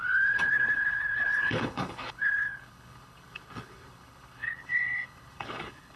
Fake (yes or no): yes